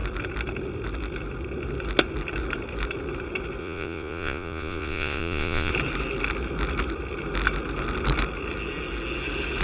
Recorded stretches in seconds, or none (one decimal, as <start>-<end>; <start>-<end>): 0.0-3.6; 5.7-9.6